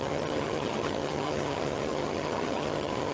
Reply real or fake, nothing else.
fake